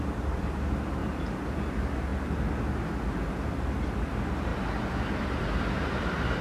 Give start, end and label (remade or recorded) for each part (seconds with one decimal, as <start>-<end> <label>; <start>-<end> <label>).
0.0-1.0 remade; 1.0-1.7 recorded; 1.7-2.1 remade; 2.1-3.3 recorded; 3.3-6.4 remade